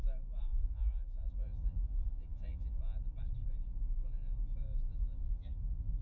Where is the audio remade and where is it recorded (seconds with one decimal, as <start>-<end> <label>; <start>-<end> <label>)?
0.0-0.5 recorded; 0.5-2.8 remade; 2.8-4.9 recorded; 4.9-6.0 remade